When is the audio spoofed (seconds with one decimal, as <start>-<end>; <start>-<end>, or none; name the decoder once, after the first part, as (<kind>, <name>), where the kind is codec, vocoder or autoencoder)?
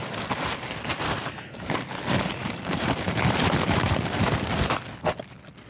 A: 0.0-3.4 (vocoder, BigVGAN v2)